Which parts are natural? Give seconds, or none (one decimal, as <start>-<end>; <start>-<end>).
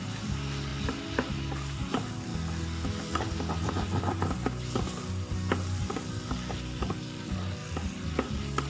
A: 0.0-8.7